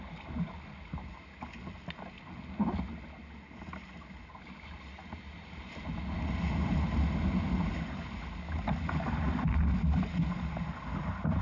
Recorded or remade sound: recorded